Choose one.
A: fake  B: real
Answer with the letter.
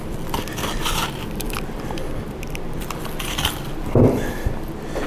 A